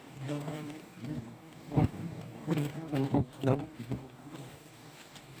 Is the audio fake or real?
fake